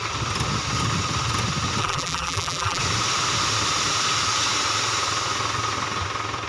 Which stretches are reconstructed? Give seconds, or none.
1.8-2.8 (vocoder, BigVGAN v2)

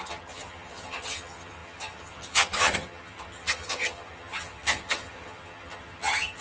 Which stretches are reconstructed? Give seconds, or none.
0.0-6.4 (vocoder, HiFi-GAN)